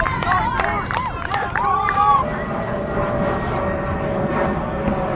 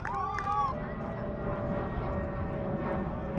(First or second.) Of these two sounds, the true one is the second